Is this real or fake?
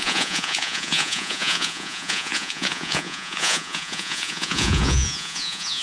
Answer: fake